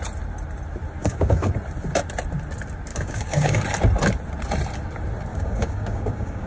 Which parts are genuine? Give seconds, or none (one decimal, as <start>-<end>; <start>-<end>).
0.0-1.0; 1.5-2.9; 3.6-5.3